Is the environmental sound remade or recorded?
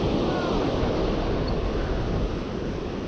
recorded